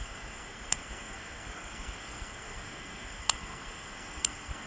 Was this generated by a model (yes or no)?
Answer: yes